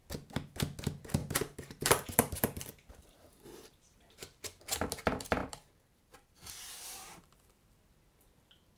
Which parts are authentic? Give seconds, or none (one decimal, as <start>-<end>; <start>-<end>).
0.0-1.2; 4.1-5.4; 6.5-8.8

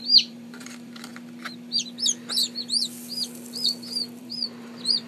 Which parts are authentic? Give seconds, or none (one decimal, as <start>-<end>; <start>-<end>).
1.1-4.2

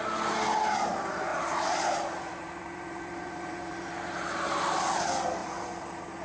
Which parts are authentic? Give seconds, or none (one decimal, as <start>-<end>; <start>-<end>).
0.0-1.3; 4.9-5.4

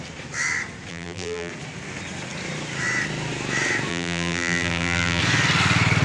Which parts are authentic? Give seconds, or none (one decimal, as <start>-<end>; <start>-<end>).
0.0-0.9; 1.5-3.9; 5.2-6.0